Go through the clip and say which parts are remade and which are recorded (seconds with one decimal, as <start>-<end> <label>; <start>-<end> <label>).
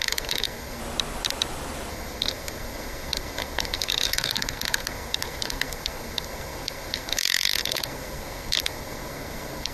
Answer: 0.0-0.8 remade; 0.8-1.9 recorded; 1.9-9.7 remade